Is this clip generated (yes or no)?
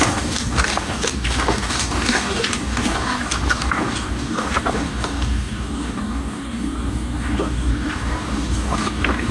yes